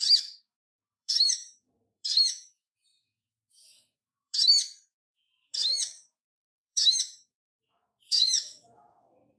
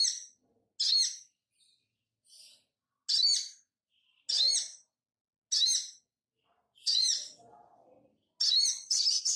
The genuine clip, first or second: second